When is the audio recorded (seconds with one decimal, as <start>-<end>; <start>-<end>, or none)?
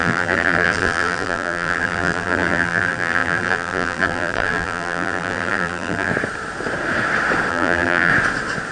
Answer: 6.1-7.5; 8.1-8.7